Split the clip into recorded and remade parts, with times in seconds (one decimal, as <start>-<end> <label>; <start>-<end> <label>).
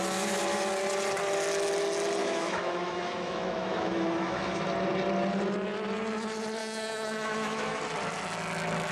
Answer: 0.0-2.2 recorded; 2.2-4.6 remade; 4.6-6.6 recorded; 6.6-7.8 remade; 7.8-8.9 recorded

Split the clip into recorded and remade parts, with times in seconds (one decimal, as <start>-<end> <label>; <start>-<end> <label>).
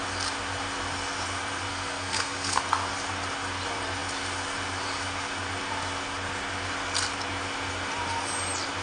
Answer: 0.0-1.7 recorded; 1.7-2.6 remade; 2.6-8.8 recorded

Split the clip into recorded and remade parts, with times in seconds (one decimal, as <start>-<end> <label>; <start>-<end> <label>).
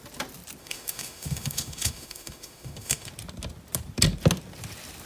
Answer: 0.0-0.6 recorded; 0.6-3.1 remade; 3.1-5.1 recorded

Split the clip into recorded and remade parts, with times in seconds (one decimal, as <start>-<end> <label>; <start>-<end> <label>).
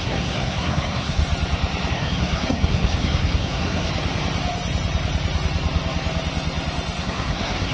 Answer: 0.0-1.2 remade; 1.2-1.9 recorded; 1.9-3.9 remade; 3.9-7.0 recorded; 7.0-7.7 remade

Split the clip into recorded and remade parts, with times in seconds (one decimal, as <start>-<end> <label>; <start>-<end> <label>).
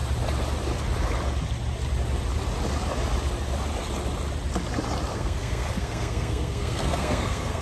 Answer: 0.0-5.1 recorded; 5.1-7.6 remade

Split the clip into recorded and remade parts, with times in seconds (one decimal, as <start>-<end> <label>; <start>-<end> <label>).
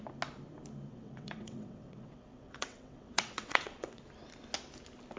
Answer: 0.0-0.9 recorded; 0.9-4.0 remade; 4.0-5.2 recorded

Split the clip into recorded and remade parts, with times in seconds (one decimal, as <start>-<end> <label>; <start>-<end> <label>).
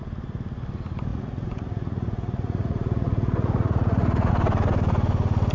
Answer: 0.0-1.1 recorded; 1.1-4.3 remade; 4.3-5.5 recorded